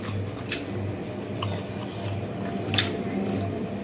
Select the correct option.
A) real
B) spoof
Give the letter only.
B